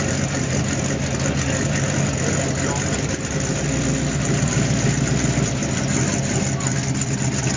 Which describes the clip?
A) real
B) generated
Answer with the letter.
A